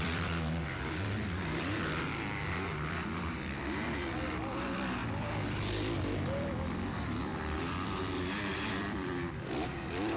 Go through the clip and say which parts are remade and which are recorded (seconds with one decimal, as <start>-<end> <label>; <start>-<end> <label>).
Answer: 0.0-5.0 remade; 5.0-6.2 recorded; 6.2-10.2 remade